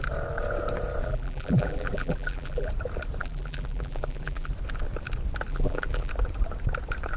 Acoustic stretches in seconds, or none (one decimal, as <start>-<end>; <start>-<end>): 0.0-1.0; 2.7-3.2; 4.5-5.5; 6.1-7.2